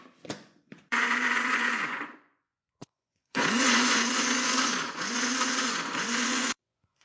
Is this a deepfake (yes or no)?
yes